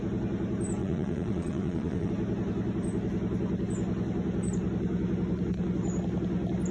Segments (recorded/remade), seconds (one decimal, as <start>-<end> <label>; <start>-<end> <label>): 0.0-0.8 recorded; 0.8-2.1 remade; 2.1-6.7 recorded